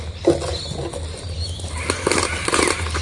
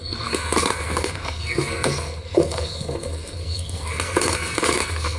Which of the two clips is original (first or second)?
first